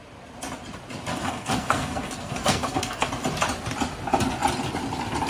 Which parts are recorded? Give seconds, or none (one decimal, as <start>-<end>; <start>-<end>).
0.0-1.1; 3.1-5.3